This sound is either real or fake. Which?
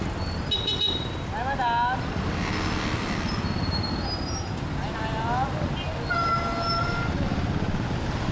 real